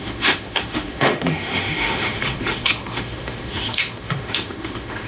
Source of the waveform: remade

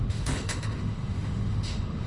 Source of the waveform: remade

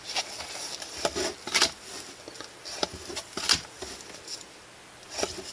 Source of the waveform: recorded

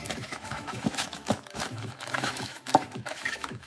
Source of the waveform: remade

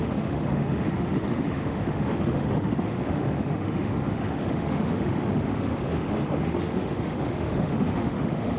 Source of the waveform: remade